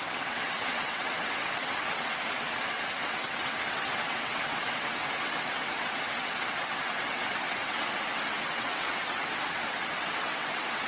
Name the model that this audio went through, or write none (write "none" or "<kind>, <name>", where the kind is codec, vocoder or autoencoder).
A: vocoder, WaveNeXt